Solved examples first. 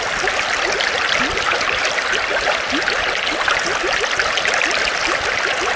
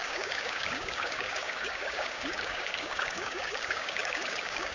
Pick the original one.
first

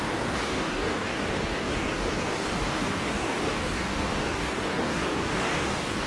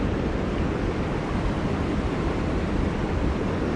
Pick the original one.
second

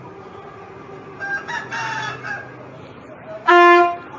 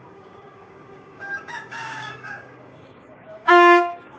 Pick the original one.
first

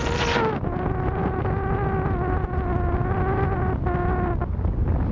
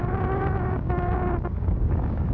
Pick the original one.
first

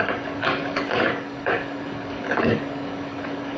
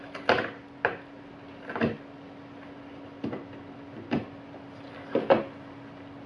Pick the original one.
second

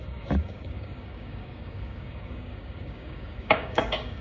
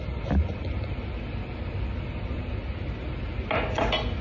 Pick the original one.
second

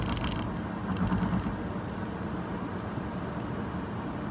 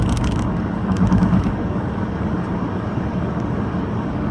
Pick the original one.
first